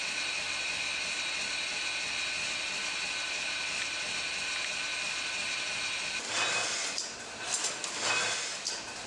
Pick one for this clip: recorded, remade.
recorded